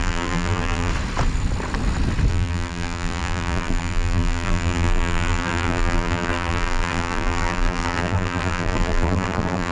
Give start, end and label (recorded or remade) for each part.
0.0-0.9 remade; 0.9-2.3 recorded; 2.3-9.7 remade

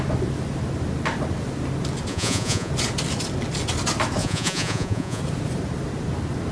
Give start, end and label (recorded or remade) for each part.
0.0-2.1 recorded; 2.1-2.7 remade; 2.7-4.2 recorded; 4.2-5.2 remade; 5.2-6.5 recorded

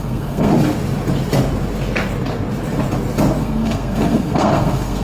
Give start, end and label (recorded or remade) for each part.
0.0-0.5 remade; 0.5-3.4 recorded; 3.4-5.0 remade

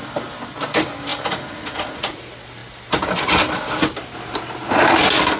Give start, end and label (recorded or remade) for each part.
0.0-1.1 recorded; 1.1-2.2 remade; 2.2-5.4 recorded

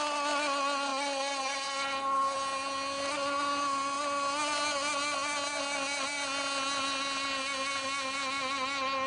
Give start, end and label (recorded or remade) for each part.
0.0-9.1 recorded

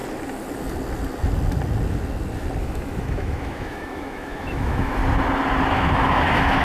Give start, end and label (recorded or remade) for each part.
0.0-2.6 recorded; 2.6-5.0 remade; 5.0-5.7 recorded; 5.7-6.6 remade